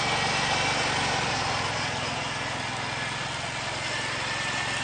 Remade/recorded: recorded